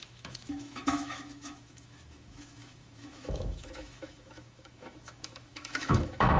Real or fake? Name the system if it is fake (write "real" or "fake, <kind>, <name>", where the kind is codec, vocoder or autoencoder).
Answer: fake, autoencoder, DAC-VAE